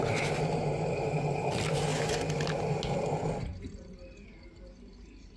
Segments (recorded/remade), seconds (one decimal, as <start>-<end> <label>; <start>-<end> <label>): 0.0-5.4 recorded